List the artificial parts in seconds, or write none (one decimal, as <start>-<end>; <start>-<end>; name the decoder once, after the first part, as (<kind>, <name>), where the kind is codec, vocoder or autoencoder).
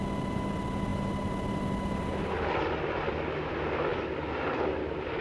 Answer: 3.9-4.7 (vocoder, BigVGAN v2)